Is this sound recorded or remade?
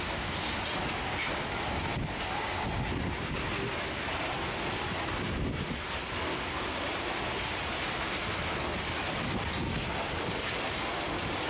recorded